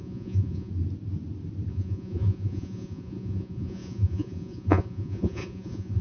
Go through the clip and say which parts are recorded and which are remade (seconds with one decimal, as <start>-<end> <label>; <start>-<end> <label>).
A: 0.0-0.7 remade; 0.7-1.7 recorded; 1.7-6.0 remade